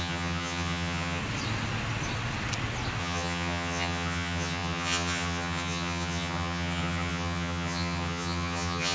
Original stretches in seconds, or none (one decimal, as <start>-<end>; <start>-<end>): 1.2-3.0